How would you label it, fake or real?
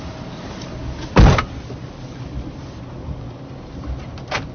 real